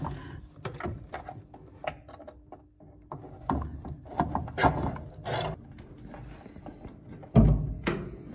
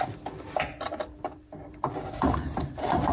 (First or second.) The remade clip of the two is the second